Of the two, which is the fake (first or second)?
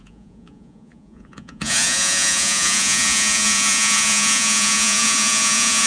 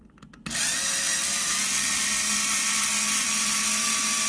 first